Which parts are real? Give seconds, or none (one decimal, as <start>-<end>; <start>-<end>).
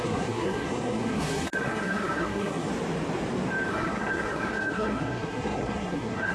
2.7-3.7